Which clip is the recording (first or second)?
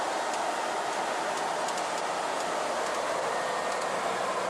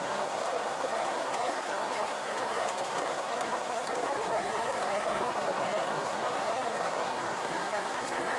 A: first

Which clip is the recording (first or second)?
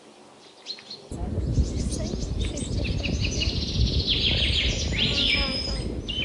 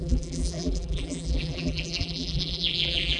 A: first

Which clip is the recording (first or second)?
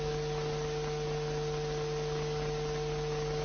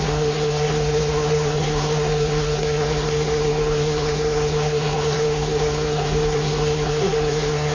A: first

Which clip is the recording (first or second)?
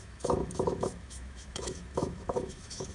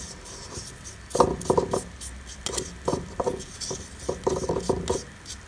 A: second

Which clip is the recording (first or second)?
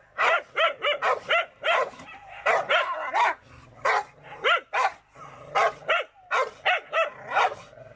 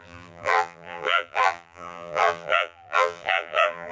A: first